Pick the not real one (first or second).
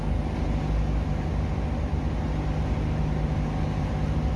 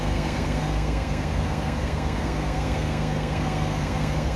second